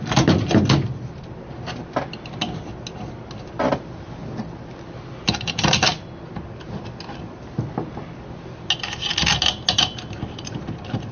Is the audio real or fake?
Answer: real